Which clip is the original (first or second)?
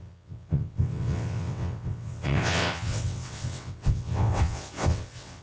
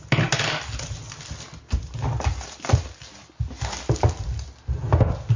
second